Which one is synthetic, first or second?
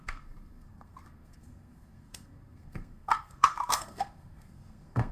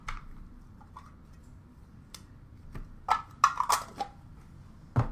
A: first